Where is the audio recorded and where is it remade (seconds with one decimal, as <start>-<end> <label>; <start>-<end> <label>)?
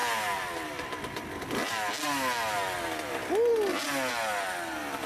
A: 0.0-5.1 recorded